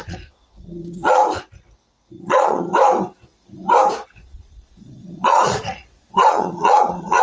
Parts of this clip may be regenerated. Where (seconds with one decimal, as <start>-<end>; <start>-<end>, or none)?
0.0-1.2; 2.2-2.7; 4.1-7.2